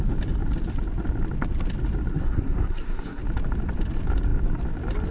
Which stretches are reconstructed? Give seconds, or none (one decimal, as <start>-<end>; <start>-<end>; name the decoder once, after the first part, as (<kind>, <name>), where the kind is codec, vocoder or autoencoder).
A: 2.1-3.2 (codec, SNAC)